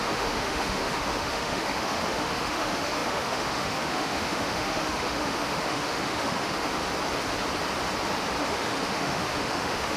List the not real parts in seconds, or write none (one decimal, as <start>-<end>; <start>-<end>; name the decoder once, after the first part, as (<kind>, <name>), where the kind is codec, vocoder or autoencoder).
0.0-6.8 (autoencoder, DAC-VAE); 8.4-10.0